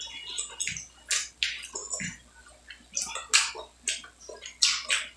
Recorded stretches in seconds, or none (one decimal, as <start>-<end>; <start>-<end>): 0.0-5.2